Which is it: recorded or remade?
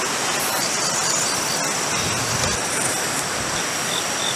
recorded